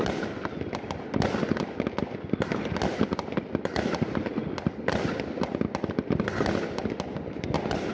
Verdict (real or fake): real